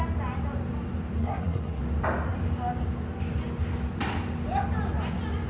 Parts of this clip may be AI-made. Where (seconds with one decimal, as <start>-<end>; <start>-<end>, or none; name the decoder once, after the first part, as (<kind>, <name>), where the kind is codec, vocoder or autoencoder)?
1.2-1.8 (codec, SNAC)